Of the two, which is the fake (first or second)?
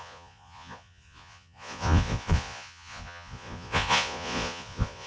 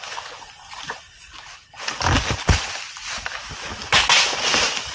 first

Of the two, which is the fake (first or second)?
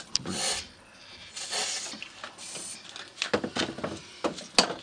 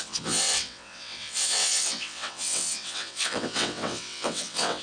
second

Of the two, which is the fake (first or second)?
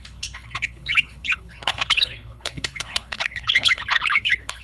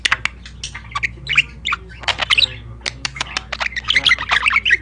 first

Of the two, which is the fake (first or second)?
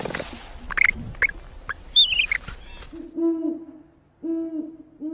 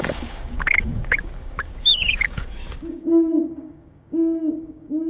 second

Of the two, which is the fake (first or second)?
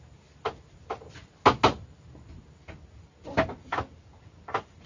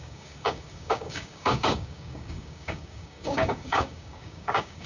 second